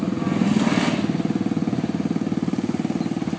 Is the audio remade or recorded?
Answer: recorded